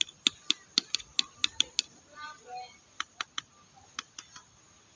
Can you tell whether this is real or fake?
real